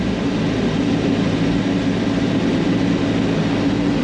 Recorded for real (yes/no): yes